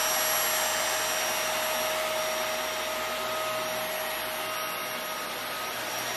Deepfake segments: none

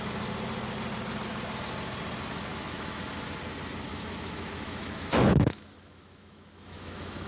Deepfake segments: 2.5-3.0 (autoencoder, DAC-VAE); 3.9-7.3

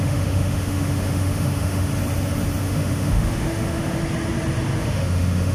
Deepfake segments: 0.0-1.9 (autoencoder, DAC-VAE); 2.6-4.0; 4.8-5.5